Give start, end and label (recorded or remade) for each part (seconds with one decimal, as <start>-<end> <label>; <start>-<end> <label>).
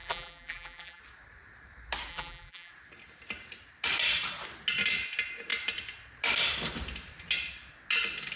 0.0-1.0 remade; 1.0-2.1 recorded; 2.1-2.7 remade; 2.7-8.4 recorded